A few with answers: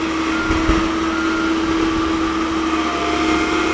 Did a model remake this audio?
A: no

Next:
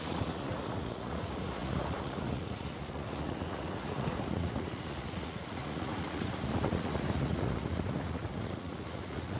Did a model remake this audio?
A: yes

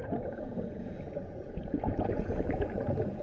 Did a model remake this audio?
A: yes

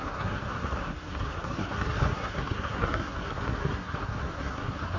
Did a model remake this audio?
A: yes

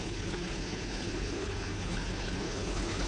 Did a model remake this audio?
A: yes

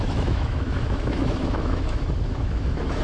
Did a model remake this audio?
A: yes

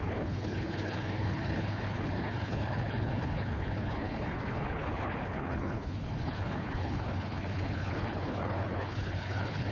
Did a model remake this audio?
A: yes